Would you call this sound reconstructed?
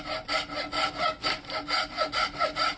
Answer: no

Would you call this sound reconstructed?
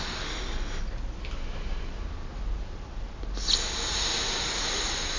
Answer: no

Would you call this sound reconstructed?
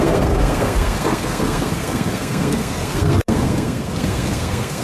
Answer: yes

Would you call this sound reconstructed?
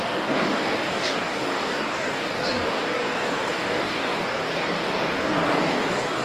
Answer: yes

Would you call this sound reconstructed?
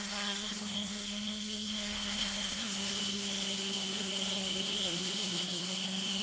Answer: yes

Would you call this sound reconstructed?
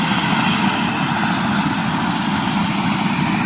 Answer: no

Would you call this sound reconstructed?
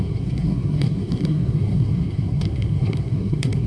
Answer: yes